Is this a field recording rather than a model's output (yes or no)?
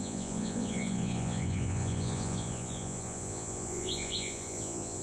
no